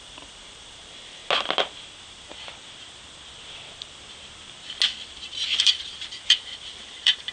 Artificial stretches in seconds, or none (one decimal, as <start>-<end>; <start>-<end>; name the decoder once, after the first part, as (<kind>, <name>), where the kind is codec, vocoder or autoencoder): 0.0-1.2 (vocoder, BigVGAN v2); 5.6-7.3